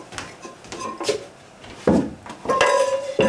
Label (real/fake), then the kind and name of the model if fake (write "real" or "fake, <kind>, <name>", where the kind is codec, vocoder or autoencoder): real